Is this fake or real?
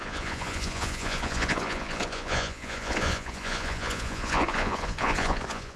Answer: fake